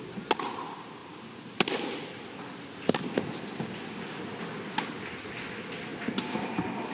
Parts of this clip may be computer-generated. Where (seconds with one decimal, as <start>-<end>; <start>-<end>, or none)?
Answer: none